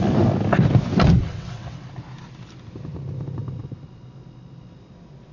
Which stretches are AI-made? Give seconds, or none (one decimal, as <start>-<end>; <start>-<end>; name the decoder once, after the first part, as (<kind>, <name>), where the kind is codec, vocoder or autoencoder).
1.2-1.9 (vocoder, WaveNeXt)